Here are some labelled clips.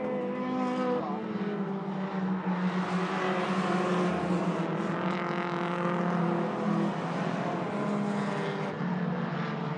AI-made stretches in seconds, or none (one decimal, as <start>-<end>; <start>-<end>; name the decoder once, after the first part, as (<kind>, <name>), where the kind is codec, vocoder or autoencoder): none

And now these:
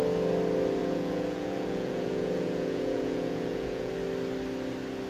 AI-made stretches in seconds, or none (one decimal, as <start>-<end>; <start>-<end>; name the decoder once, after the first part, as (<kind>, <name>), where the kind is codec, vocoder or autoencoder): 0.8-3.9 (vocoder, Vocos)

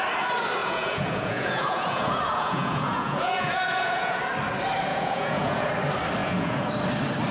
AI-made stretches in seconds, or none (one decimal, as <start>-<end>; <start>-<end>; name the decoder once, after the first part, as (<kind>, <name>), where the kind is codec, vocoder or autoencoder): 0.6-4.2 (vocoder, Vocos); 4.9-5.7; 6.2-6.7

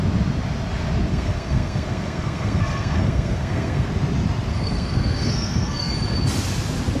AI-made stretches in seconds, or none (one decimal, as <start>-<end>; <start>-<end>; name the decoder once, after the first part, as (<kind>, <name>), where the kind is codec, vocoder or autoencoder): 1.1-3.9 (codec, SNAC); 4.5-5.9

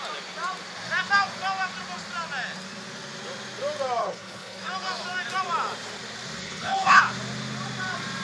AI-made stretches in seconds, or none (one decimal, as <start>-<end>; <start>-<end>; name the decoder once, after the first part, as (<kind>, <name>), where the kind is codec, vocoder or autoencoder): 4.0-4.6 (codec, HILCodec); 6.4-7.0

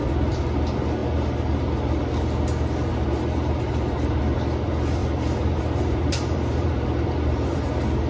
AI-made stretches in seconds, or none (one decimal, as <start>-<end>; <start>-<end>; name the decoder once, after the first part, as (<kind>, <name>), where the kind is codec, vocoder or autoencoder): 2.9-4.2 (vocoder, BigVGAN v2); 5.0-7.6